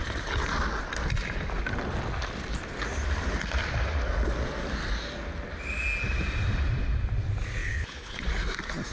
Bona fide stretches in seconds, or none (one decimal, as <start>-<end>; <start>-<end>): 0.0-7.6; 8.2-8.9